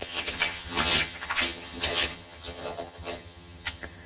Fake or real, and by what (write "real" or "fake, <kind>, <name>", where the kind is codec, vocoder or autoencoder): fake, vocoder, HiFi-GAN